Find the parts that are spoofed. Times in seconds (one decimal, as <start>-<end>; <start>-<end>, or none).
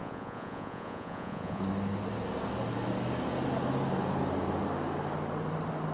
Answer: 0.0-1.6